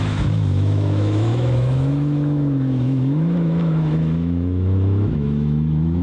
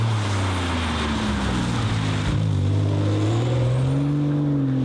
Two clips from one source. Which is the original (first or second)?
second